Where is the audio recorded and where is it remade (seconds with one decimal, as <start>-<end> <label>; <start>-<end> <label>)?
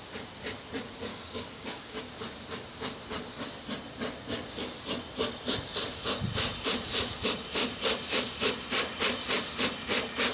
0.0-1.1 recorded; 1.1-2.0 remade; 2.0-10.3 recorded